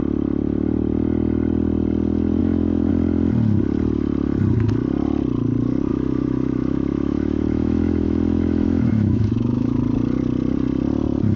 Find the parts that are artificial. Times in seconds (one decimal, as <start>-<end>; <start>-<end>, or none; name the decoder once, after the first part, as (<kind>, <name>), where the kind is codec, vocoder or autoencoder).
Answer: 2.4-2.9 (autoencoder, DAC-VAE); 5.9-9.8